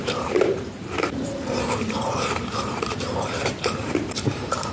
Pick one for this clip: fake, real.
fake